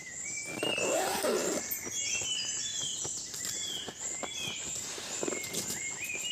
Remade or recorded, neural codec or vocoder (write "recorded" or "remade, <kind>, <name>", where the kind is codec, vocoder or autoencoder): recorded